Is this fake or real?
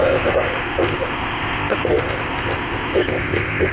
fake